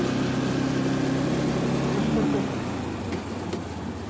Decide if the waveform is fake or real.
real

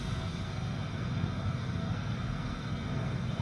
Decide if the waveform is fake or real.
fake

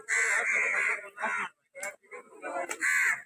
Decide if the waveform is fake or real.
real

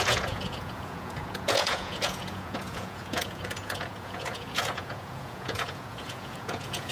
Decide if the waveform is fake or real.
fake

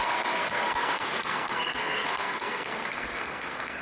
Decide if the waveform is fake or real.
fake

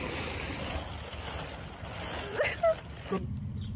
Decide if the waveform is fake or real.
real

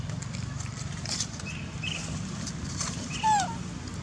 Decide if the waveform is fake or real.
fake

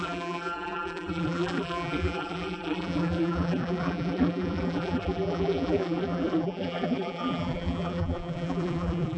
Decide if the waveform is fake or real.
fake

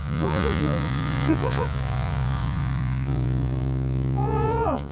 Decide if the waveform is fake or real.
fake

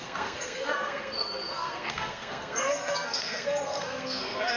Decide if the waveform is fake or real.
fake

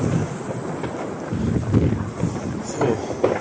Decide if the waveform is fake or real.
real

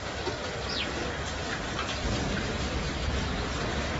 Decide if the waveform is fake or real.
real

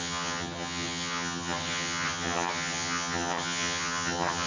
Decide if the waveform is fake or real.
fake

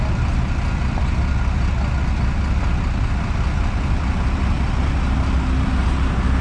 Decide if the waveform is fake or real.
real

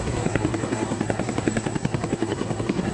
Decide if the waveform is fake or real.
fake